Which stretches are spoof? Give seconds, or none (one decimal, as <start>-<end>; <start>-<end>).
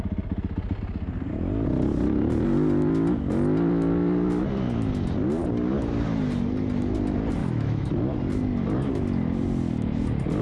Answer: 7.4-7.9